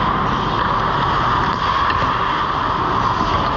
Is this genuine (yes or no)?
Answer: yes